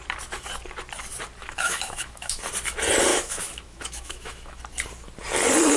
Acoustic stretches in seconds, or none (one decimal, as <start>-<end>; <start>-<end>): 0.0-1.4; 2.4-3.1; 4.6-5.8